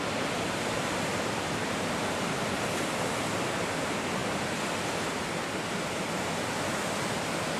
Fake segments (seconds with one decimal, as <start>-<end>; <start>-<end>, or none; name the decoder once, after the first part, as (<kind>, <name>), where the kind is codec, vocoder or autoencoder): none